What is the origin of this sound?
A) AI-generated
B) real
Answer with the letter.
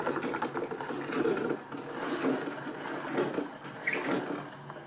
B